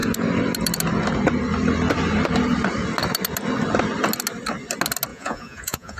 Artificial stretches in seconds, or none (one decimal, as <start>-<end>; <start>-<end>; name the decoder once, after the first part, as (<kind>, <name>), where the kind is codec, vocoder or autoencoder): 5.1-6.0 (vocoder, Vocos)